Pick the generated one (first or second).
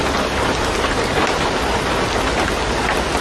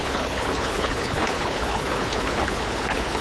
second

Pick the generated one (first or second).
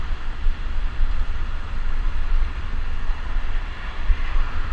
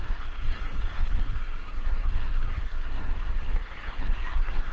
second